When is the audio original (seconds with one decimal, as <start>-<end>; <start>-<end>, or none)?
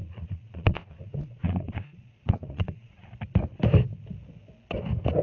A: 3.1-5.2